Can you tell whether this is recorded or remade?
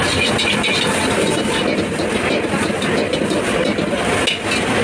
recorded